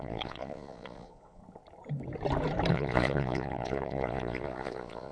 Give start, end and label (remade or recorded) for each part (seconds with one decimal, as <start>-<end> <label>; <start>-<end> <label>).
0.0-1.4 remade; 1.4-2.7 recorded; 2.7-5.1 remade